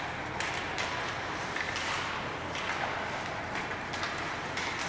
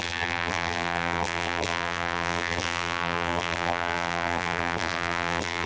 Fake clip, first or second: second